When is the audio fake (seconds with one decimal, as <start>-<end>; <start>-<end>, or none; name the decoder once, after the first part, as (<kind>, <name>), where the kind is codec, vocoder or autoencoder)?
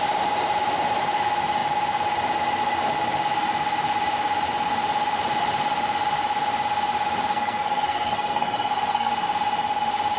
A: 7.3-9.1 (codec, SNAC)